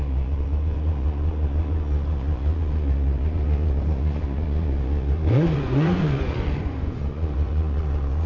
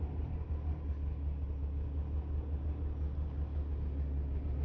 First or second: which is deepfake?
first